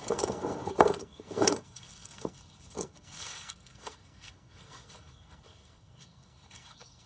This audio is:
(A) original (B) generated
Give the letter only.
B